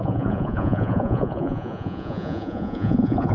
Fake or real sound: fake